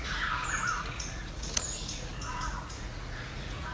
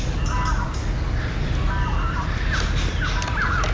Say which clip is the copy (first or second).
first